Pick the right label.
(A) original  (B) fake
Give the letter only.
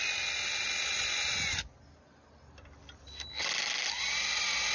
A